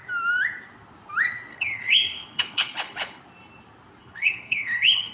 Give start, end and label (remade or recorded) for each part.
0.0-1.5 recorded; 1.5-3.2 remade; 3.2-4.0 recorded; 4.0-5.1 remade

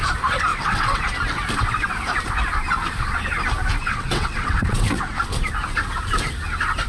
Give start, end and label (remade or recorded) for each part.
0.0-0.5 recorded; 0.5-1.0 remade; 1.0-3.8 recorded; 3.8-5.2 remade; 5.2-6.9 recorded

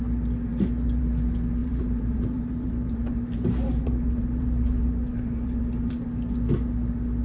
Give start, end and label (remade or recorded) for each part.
0.0-1.6 recorded; 1.6-5.9 remade; 5.9-7.2 recorded

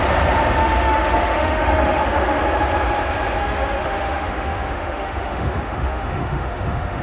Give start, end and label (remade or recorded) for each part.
0.0-0.6 recorded; 0.6-2.4 remade; 2.4-3.4 recorded; 3.4-7.0 remade

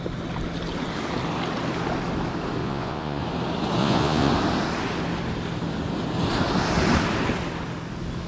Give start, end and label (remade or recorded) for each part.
0.0-2.6 recorded; 2.6-3.2 remade; 3.2-3.8 recorded; 3.8-4.3 remade; 4.3-8.3 recorded